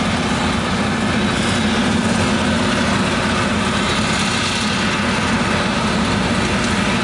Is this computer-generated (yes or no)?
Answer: no